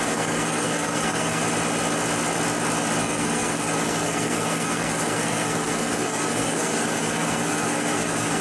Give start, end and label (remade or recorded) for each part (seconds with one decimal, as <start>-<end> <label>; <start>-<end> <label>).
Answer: 0.0-1.4 remade; 1.4-3.0 recorded; 3.0-8.4 remade